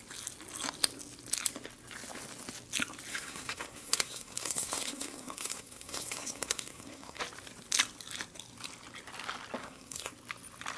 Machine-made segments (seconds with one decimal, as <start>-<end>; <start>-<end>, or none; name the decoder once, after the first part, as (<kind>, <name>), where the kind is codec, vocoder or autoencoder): 3.1-7.2 (codec, SNAC); 9.6-10.1